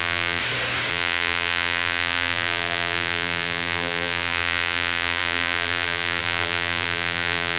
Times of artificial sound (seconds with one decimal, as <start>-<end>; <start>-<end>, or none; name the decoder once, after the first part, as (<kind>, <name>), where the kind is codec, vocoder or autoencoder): 0.0-0.4 (vocoder, BigVGAN v2); 0.9-7.6